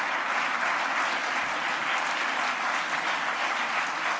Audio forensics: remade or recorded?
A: recorded